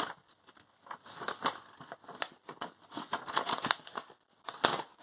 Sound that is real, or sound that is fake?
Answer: real